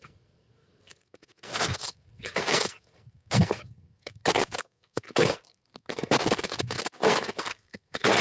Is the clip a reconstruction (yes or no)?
yes